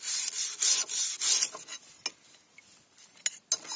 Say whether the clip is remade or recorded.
recorded